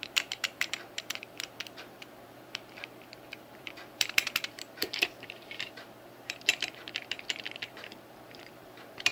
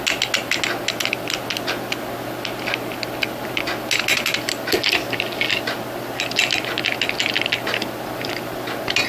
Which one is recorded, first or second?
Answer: second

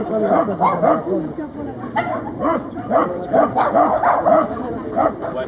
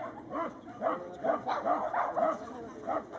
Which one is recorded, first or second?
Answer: second